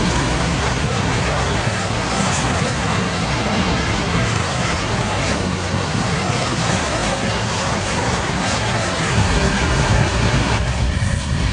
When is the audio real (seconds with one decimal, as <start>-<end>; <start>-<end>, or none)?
none